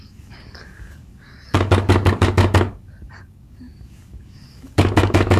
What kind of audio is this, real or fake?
fake